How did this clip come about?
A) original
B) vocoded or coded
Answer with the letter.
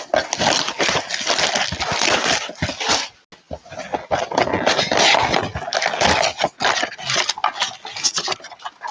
A